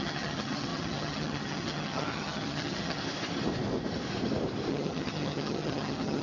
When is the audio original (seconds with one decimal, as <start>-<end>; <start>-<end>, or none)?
3.0-4.7

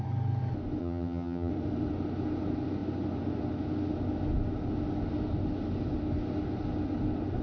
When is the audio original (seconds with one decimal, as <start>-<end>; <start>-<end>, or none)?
0.0-0.8; 1.5-7.4

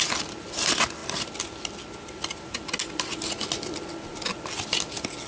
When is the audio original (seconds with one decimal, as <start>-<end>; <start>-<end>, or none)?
0.0-5.3